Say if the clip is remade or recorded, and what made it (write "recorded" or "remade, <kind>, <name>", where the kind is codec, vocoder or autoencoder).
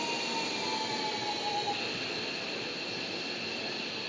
recorded